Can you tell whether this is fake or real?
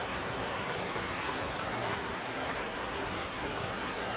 fake